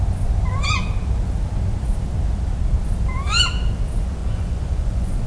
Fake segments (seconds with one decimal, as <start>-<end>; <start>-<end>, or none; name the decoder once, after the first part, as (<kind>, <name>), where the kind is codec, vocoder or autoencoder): 4.2-5.3 (vocoder, Vocos)